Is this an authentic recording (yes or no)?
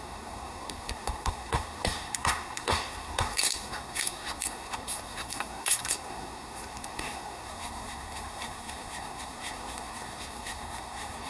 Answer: no